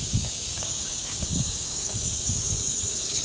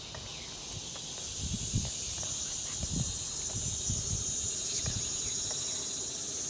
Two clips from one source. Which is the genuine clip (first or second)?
second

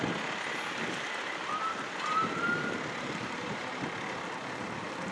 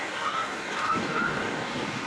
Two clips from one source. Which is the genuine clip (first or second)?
first